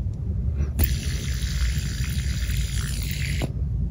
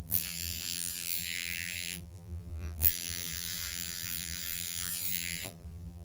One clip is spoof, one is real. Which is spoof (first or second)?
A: second